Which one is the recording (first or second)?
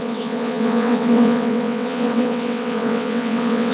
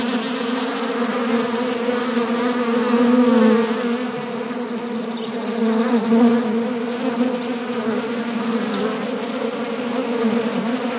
second